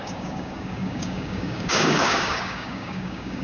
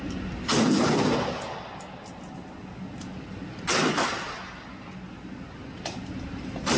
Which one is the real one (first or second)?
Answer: second